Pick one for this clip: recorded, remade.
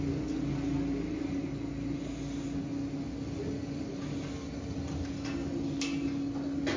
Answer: recorded